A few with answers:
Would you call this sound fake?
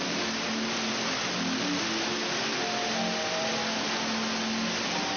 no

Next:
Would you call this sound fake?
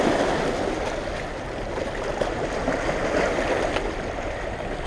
no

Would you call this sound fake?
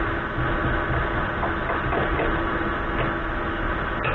no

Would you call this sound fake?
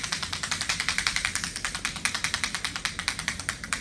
yes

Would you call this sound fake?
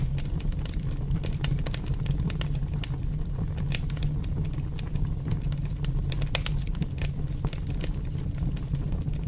no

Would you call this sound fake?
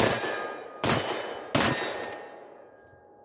no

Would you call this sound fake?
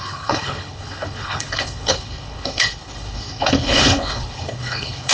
yes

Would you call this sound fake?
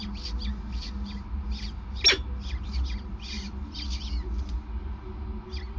no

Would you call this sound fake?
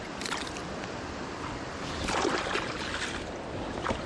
no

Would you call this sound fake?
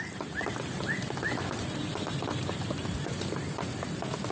no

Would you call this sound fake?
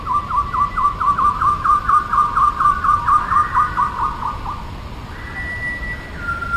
no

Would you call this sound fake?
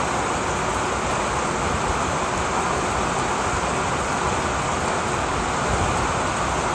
no